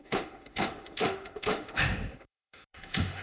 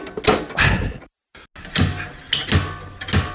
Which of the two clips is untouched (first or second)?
second